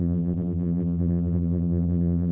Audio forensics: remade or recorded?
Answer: remade